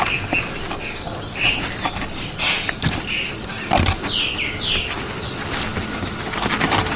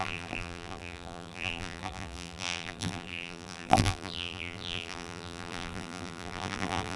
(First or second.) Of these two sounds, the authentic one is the first